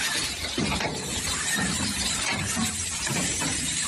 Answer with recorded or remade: remade